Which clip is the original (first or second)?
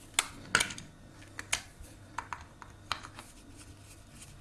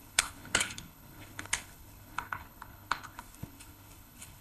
first